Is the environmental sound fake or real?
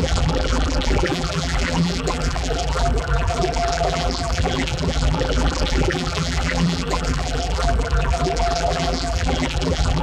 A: fake